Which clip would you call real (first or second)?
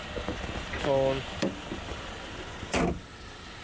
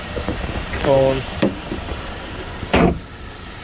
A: first